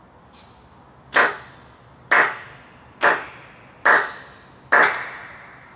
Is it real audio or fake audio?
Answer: real